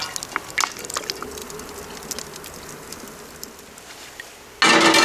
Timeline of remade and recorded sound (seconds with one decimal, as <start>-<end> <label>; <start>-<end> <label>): 0.0-5.0 recorded